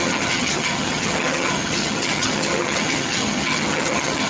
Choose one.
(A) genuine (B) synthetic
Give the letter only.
B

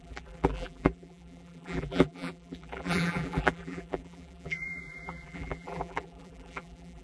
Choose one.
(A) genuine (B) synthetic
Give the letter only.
B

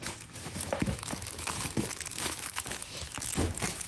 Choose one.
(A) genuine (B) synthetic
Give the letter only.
B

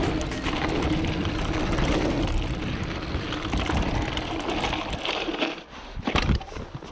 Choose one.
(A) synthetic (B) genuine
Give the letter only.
B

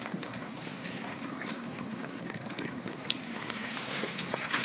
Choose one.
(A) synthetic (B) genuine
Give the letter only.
A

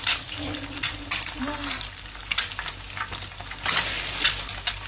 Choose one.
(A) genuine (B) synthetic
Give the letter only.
A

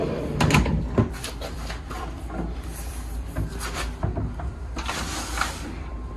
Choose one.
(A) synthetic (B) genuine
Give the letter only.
A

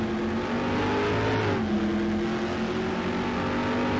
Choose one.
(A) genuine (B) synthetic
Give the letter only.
A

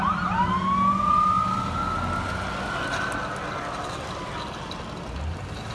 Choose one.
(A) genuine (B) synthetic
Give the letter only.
A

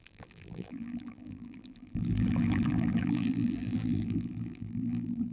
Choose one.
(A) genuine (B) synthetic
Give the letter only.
B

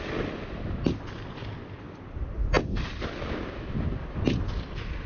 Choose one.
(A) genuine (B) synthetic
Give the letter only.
A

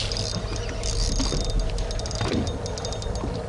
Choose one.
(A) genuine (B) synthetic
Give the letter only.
A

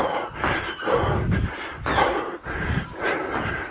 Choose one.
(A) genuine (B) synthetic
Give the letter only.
A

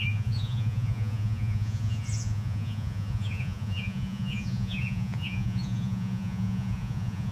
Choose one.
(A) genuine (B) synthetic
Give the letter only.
B